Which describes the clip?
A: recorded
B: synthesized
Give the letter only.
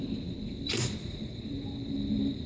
B